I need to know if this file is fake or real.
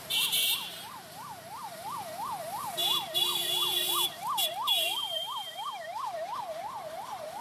fake